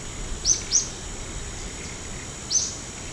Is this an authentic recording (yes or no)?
yes